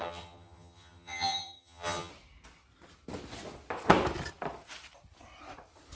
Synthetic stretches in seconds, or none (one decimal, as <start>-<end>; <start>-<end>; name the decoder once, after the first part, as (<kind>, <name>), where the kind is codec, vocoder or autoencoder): 0.0-2.1 (vocoder, HiFi-GAN)